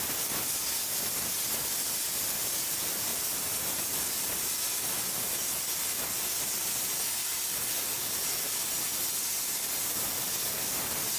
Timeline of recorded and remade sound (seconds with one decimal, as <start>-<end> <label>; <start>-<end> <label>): 0.0-11.2 recorded